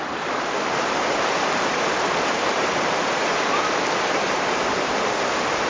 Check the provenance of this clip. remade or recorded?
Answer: recorded